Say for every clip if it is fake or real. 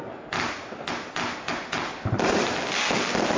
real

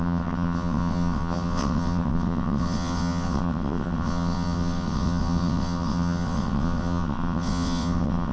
fake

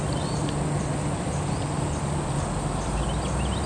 real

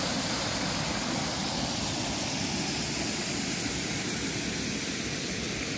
real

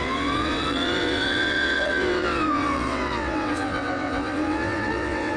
fake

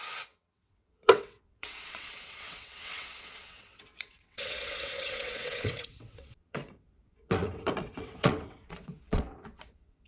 fake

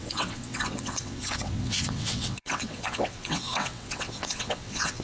fake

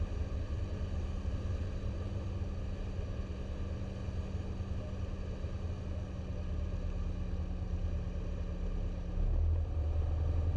real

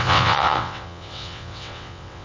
fake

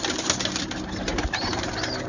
real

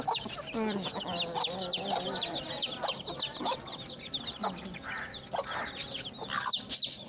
real